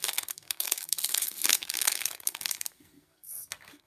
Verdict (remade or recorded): remade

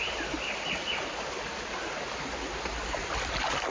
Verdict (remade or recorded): recorded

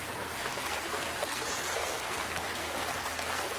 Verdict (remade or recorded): remade